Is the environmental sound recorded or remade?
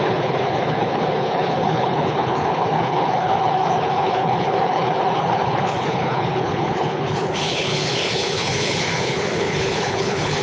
remade